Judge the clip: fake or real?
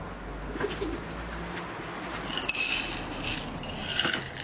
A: real